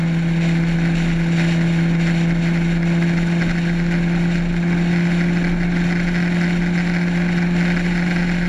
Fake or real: real